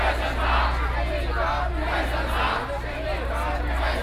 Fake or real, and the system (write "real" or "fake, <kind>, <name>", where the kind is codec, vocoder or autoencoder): real